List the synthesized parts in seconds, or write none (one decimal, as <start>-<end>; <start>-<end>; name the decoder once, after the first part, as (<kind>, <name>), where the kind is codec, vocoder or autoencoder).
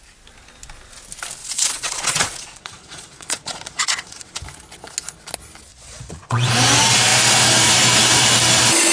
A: 1.4-4.4 (vocoder, Vocos); 5.7-6.5